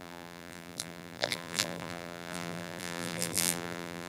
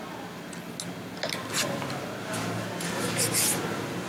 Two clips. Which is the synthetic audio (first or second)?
first